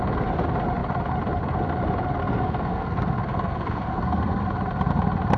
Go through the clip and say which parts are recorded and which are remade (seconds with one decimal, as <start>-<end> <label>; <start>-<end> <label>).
0.0-2.2 recorded; 2.2-4.4 remade; 4.4-5.4 recorded